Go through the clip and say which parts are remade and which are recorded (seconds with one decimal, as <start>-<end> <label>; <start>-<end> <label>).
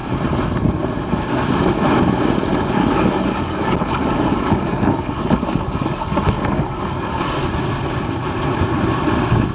0.0-2.5 recorded; 2.5-7.2 remade; 7.2-9.5 recorded